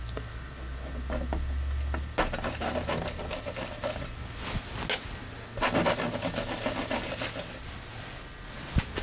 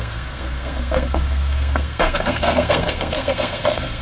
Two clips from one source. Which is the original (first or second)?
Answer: first